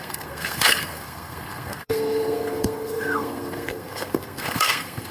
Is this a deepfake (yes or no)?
yes